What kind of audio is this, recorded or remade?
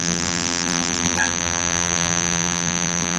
remade